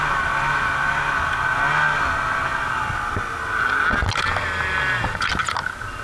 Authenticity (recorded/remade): recorded